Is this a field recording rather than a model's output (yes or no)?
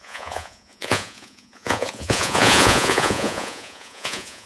no